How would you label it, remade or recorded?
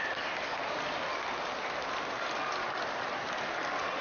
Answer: recorded